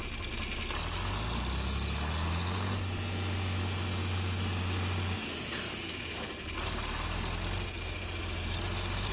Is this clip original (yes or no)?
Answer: yes